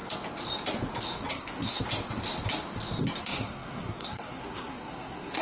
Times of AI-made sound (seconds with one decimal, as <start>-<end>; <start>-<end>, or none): 1.3-1.8; 3.2-5.4